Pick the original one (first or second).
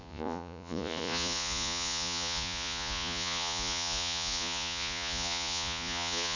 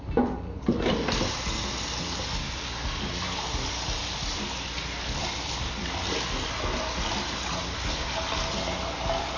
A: second